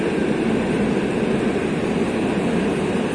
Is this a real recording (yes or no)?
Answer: yes